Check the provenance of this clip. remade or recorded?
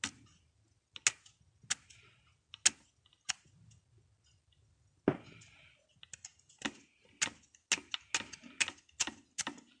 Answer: recorded